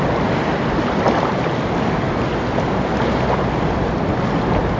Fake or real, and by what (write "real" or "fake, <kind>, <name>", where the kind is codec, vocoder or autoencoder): real